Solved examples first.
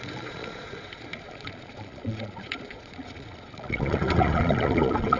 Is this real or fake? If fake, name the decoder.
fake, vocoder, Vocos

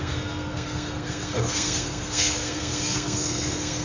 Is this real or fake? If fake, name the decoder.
fake, codec, SNAC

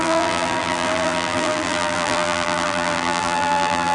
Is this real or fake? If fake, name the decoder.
fake, vocoder, BigVGAN v2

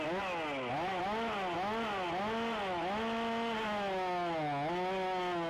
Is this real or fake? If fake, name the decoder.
real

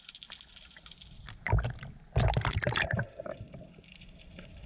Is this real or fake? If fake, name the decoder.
real